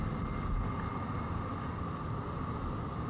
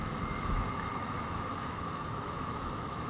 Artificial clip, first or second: second